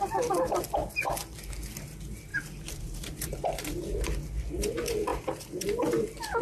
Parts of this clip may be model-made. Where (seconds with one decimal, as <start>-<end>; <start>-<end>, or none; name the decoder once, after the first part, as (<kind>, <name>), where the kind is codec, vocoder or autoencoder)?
0.8-1.4 (vocoder, BigVGAN v2); 2.3-3.4; 5.1-5.8